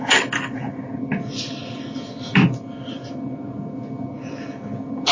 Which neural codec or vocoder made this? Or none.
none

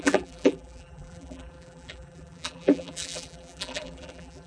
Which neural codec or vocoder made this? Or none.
vocoder, BigVGAN v2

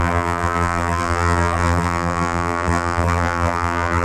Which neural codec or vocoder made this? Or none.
vocoder, BigVGAN v2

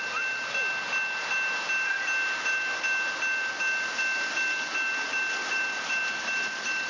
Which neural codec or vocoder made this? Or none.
none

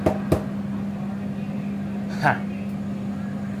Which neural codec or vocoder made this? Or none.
none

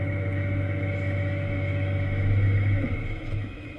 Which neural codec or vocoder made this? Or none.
autoencoder, DAC-VAE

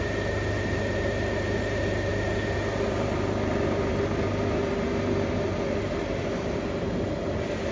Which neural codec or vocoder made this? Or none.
none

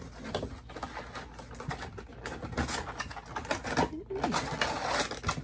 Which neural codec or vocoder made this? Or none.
none